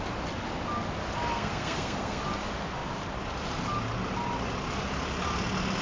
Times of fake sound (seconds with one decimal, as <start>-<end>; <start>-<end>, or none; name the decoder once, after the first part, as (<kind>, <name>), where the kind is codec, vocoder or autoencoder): 1.3-2.2 (codec, SNAC)